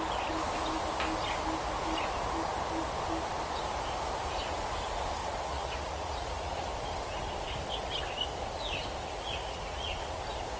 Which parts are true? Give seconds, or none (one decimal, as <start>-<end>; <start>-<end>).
0.0-5.2; 6.7-9.0; 10.2-10.6